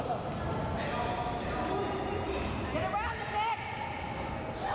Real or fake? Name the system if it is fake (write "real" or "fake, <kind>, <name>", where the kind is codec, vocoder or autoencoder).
real